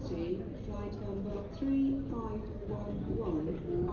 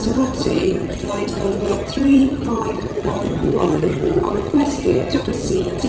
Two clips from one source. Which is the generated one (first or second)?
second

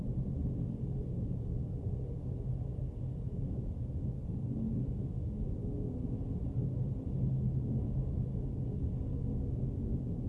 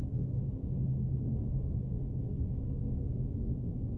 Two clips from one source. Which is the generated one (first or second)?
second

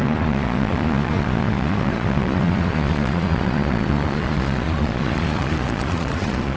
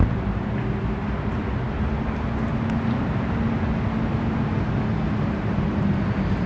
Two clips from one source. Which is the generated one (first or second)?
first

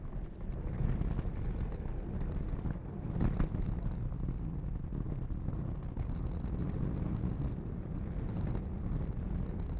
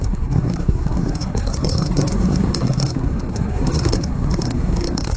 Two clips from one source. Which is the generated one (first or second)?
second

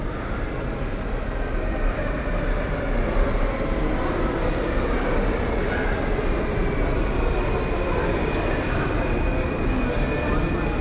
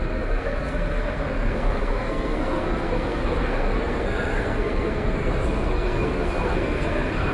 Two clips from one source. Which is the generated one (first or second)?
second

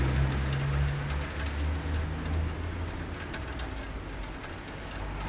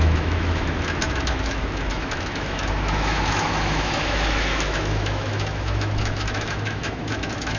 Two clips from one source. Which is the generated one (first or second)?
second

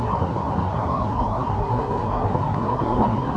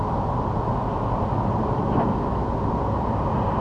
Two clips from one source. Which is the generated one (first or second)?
first